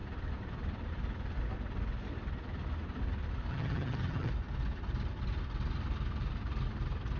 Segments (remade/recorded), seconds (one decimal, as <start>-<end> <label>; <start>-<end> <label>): 0.0-3.5 recorded; 3.5-4.3 remade; 4.3-7.2 recorded